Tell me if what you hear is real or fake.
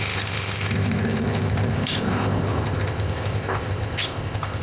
fake